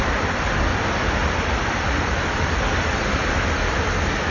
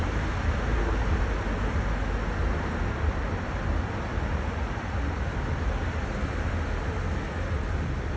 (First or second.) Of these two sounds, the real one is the second